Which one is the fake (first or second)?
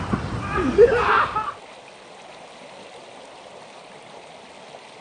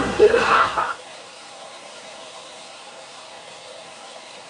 second